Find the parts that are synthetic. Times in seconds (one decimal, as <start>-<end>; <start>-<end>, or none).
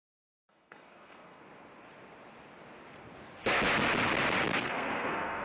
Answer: 0.0-1.4; 4.6-5.4